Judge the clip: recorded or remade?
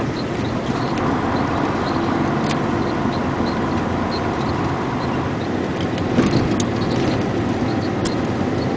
recorded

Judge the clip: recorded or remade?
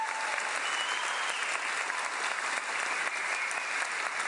recorded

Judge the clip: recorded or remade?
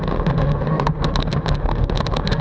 remade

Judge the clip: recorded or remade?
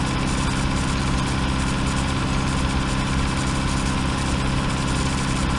recorded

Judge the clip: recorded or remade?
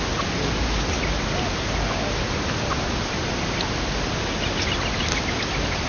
recorded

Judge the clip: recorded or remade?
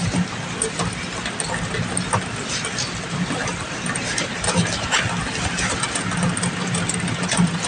recorded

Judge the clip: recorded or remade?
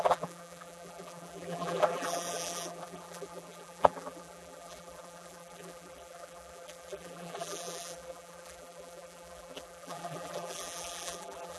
remade